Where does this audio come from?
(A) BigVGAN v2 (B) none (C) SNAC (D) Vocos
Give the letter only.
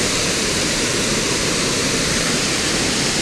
A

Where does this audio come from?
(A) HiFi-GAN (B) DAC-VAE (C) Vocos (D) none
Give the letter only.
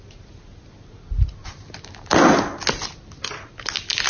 D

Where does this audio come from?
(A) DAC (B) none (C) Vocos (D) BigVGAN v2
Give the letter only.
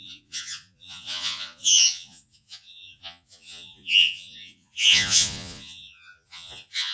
C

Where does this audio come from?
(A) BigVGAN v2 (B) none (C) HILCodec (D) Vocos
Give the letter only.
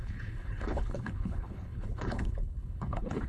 C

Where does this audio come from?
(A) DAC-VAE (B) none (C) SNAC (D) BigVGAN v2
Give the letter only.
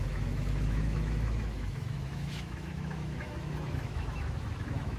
A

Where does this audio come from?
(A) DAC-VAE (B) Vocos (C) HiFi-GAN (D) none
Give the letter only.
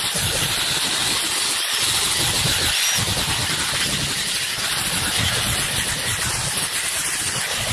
D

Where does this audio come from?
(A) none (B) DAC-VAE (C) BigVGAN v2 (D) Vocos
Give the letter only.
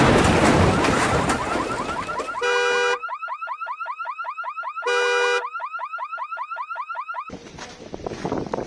A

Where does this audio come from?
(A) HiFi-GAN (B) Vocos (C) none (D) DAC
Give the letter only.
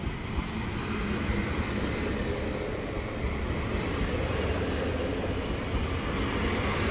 C